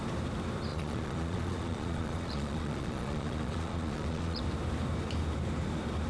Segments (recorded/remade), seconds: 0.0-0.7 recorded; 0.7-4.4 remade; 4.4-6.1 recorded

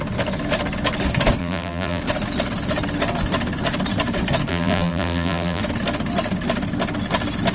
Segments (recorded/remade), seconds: 0.0-1.4 recorded; 1.4-2.0 remade; 2.0-4.5 recorded; 4.5-5.6 remade; 5.6-7.5 recorded